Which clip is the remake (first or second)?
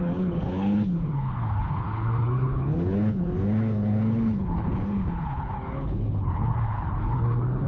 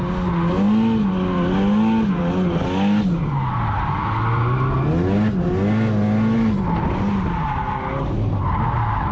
first